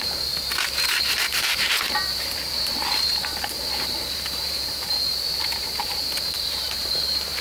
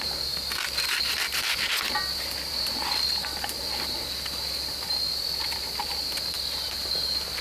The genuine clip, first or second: second